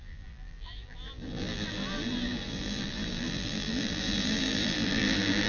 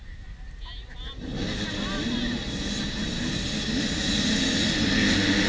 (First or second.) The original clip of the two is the second